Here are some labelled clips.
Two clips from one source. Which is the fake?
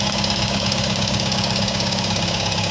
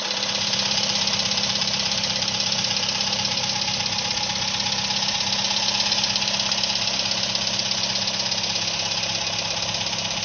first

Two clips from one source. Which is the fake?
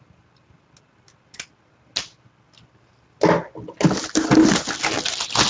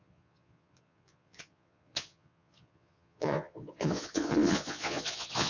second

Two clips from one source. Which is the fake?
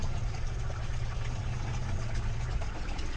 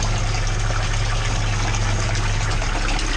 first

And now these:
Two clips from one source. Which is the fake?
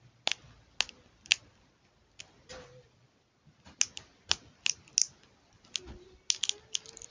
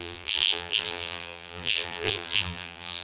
second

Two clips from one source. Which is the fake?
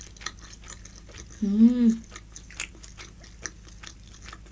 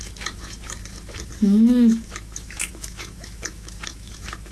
second